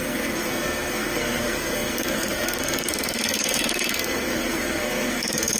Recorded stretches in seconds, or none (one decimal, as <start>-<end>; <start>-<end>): none